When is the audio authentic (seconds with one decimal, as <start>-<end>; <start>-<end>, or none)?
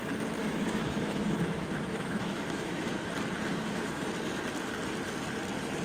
0.0-0.4; 3.1-3.5; 4.1-5.8